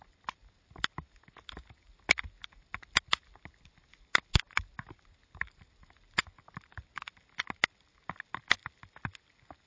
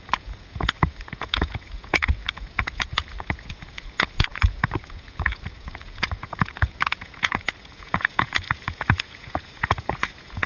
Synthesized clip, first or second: second